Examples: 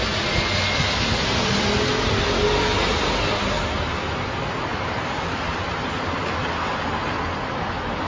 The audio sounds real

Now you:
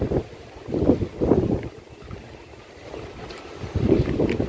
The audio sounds real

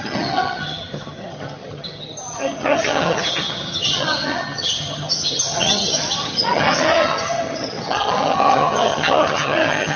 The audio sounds fake